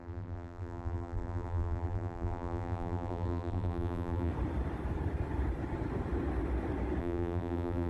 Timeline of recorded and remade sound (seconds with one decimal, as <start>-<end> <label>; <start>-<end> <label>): 0.0-4.3 remade; 4.3-7.0 recorded; 7.0-7.9 remade